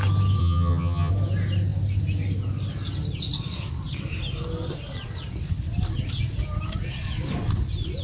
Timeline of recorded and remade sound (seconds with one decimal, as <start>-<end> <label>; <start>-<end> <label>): 0.0-0.4 recorded; 0.4-1.1 remade; 1.1-8.0 recorded